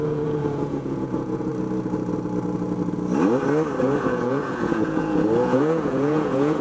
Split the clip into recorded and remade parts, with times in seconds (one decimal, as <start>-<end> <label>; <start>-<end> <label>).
0.0-1.5 remade; 1.5-3.8 recorded; 3.8-6.6 remade